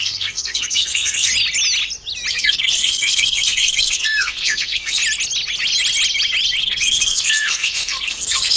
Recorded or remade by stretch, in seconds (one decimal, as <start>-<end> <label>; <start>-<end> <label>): 0.0-1.3 remade; 1.3-2.3 recorded; 2.3-5.0 remade; 5.0-6.6 recorded; 6.6-8.6 remade